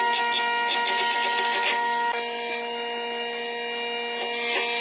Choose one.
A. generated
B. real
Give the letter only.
B